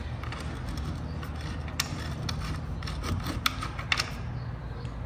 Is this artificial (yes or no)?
no